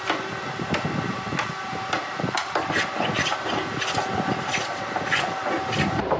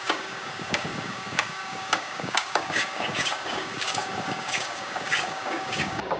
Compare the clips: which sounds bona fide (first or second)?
first